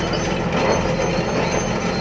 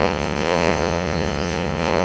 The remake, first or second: second